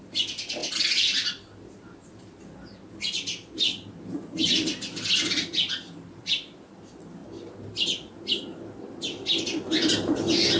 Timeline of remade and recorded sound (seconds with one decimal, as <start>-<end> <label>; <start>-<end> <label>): 0.0-10.6 recorded